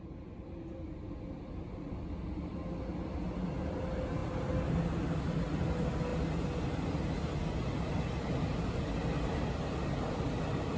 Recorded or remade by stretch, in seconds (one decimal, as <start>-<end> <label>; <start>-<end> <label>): 0.0-10.8 recorded